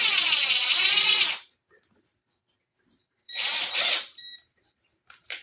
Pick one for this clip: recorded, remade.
remade